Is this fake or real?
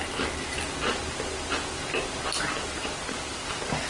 real